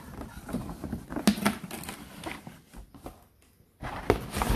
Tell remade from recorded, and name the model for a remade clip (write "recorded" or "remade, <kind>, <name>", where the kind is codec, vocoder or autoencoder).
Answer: recorded